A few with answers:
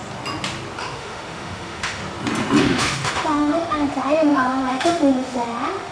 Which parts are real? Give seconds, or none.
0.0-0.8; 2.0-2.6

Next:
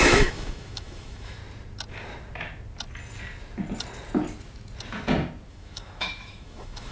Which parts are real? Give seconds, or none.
1.4-5.5

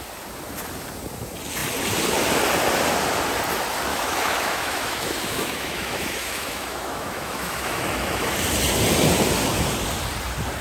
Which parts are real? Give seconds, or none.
0.0-3.9; 8.3-10.6

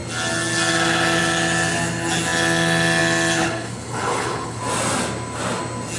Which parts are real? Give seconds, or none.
0.0-3.4; 4.6-6.0

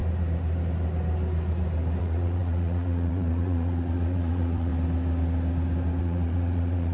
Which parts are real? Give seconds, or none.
0.0-2.0; 4.7-6.0

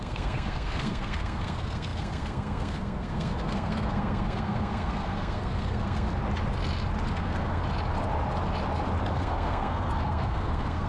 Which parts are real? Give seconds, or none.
6.1-7.1; 7.6-9.1

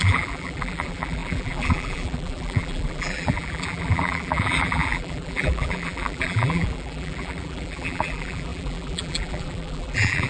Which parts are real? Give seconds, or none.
none